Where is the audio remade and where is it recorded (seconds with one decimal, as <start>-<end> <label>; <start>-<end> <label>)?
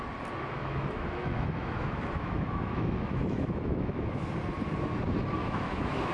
0.0-0.6 recorded; 0.6-4.3 remade; 4.3-5.4 recorded; 5.4-6.1 remade